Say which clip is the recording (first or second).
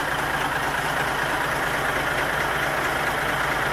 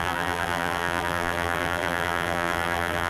first